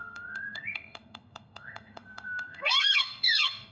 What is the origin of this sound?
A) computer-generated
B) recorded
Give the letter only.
A